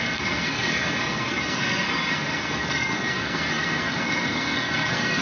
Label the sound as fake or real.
fake